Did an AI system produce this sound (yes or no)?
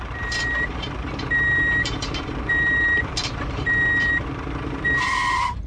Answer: yes